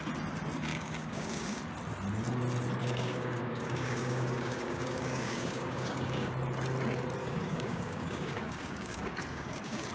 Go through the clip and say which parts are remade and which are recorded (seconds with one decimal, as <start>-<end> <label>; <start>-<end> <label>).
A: 0.0-0.7 recorded; 0.7-1.6 remade; 1.6-2.8 recorded; 2.8-6.3 remade; 6.3-7.2 recorded; 7.2-9.9 remade